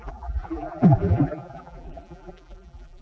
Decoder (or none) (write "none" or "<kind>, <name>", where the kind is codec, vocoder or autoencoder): vocoder, BigVGAN v2